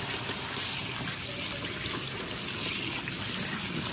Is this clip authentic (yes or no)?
yes